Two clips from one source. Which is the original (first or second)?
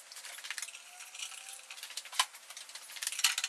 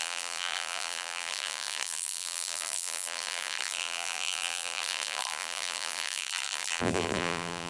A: first